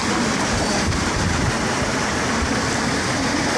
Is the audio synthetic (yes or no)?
no